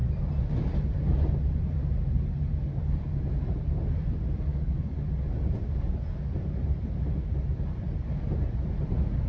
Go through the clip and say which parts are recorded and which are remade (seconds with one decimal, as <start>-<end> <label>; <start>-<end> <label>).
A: 0.0-4.5 recorded; 4.5-5.1 remade; 5.1-9.3 recorded